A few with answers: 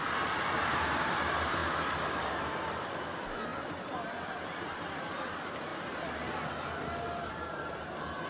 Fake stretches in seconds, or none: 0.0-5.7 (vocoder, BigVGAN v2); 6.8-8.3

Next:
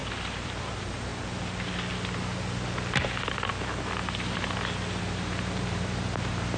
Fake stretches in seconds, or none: 0.6-1.1 (vocoder, BigVGAN v2); 5.0-6.6

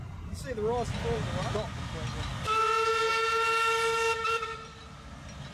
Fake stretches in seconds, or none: none

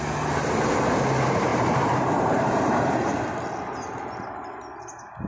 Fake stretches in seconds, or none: 1.5-3.0 (vocoder, BigVGAN v2)

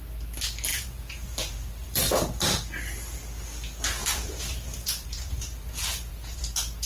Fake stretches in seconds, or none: 0.7-2.1 (vocoder, BigVGAN v2); 4.0-6.4